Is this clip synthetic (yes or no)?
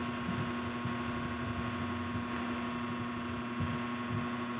no